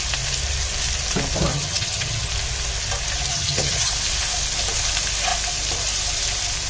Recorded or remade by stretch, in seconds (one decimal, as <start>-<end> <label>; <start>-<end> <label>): 0.0-1.5 recorded; 1.5-2.3 remade; 2.3-3.3 recorded; 3.3-3.9 remade; 3.9-6.7 recorded